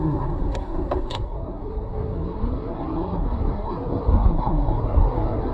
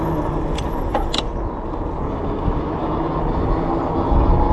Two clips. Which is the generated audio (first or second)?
first